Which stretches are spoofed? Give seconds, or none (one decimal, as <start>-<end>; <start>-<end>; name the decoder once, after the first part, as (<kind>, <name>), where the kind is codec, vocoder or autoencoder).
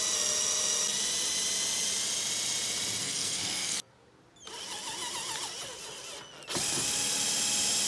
3.0-3.9 (codec, SNAC)